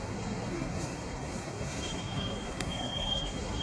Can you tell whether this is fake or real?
fake